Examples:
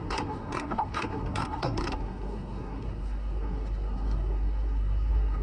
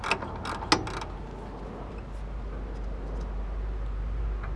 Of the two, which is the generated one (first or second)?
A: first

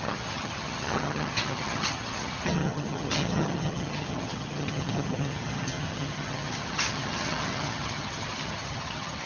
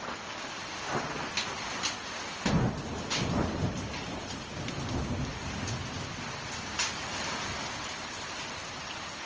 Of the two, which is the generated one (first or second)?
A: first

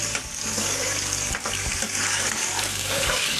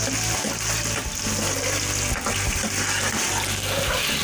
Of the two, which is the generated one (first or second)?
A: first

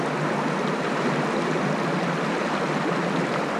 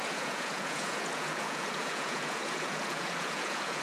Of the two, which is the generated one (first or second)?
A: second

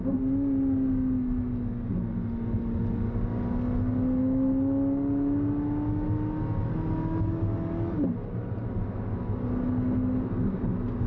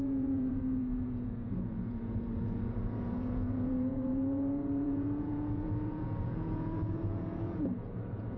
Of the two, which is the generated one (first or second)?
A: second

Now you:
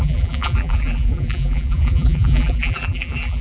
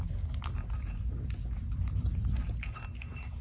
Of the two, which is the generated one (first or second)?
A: first